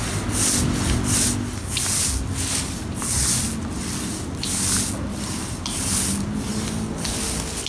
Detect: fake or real real